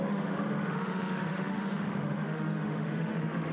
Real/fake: fake